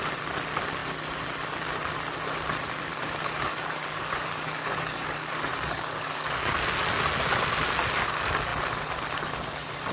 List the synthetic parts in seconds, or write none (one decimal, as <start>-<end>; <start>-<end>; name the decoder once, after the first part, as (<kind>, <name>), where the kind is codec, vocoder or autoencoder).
2.9-6.6 (codec, DAC)